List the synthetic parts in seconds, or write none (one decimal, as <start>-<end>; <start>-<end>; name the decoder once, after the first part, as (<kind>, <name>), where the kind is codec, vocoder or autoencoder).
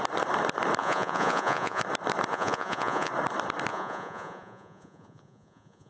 0.8-1.8 (vocoder, Vocos); 2.3-3.1; 3.7-5.9